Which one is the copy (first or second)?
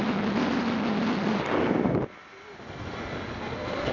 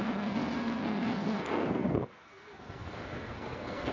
second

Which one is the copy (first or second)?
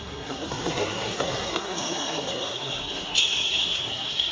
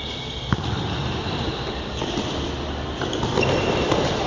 first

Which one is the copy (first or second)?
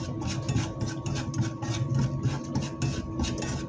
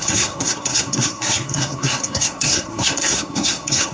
second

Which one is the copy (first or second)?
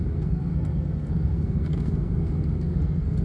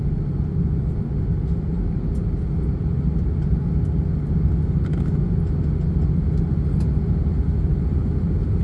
first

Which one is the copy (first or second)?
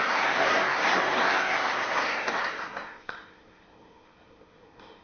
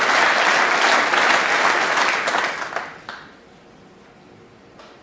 first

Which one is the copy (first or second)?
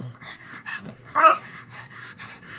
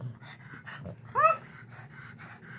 first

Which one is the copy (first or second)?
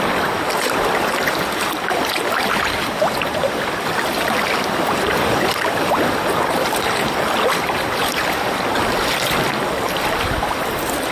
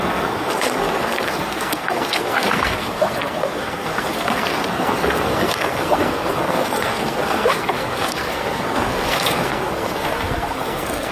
second